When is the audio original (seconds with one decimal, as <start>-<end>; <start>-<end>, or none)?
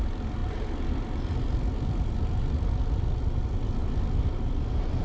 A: 0.0-5.0